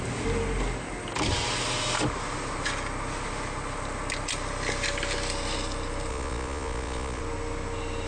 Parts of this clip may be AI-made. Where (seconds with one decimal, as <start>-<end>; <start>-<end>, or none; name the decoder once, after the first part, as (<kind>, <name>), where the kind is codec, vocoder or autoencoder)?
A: 6.1-7.2 (vocoder, Vocos)